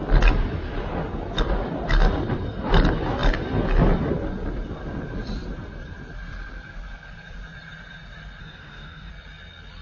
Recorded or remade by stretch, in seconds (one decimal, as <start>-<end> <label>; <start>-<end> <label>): 0.0-8.4 recorded; 8.4-9.1 remade; 9.1-9.8 recorded